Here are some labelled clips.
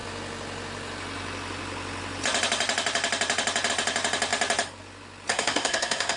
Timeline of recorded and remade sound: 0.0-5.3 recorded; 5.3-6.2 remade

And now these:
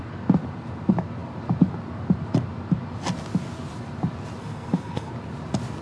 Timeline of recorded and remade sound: 0.0-4.4 recorded; 4.4-5.1 remade; 5.1-5.8 recorded

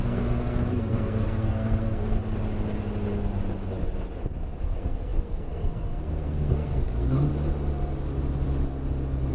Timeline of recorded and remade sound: 0.0-2.2 remade; 2.2-4.6 recorded; 4.6-7.3 remade; 7.3-9.3 recorded

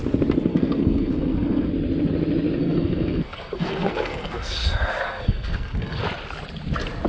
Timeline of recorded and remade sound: 0.0-0.5 recorded; 0.5-1.7 remade; 1.7-2.6 recorded; 2.6-6.0 remade; 6.0-7.1 recorded

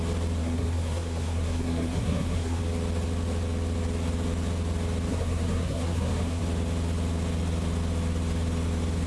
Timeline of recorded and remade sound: 0.0-0.4 recorded; 0.4-2.6 remade; 2.6-5.1 recorded; 5.1-6.4 remade; 6.4-9.1 recorded